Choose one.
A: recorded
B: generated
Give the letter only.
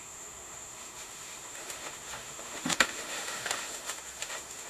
B